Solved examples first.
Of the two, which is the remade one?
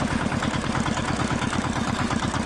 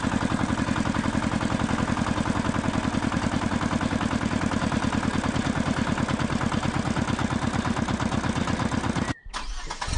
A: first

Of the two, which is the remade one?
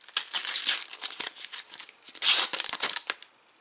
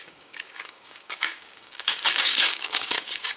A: second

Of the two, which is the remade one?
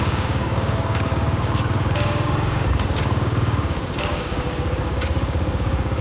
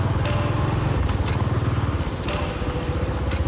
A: first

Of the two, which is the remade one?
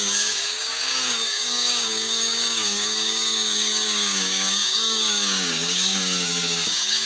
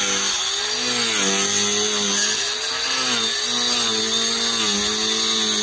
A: first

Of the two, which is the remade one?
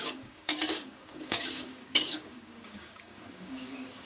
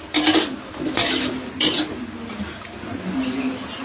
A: first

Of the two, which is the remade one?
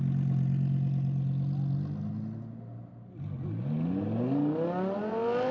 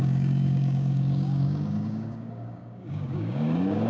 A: second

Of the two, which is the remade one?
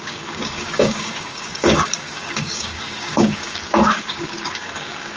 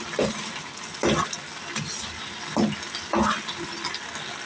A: first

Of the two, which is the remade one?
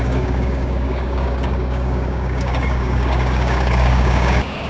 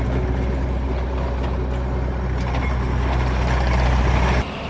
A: first